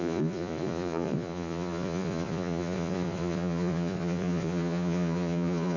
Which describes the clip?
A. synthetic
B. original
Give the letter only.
A